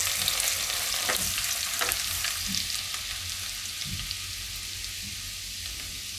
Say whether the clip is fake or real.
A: real